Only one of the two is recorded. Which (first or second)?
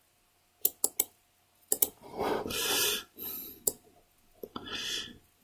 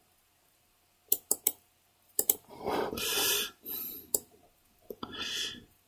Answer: first